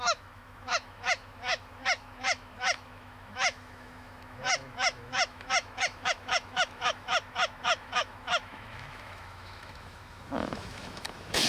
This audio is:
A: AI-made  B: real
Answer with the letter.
A